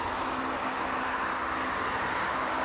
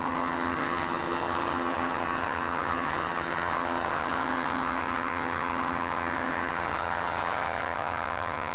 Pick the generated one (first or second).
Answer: second